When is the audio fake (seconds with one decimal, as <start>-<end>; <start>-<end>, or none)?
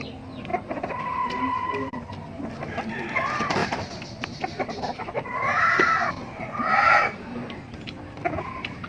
0.5-2.0; 3.6-7.7